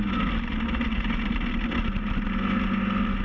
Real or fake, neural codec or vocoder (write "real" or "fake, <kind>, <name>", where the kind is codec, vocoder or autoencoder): real